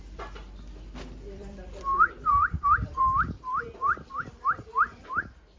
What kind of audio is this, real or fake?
fake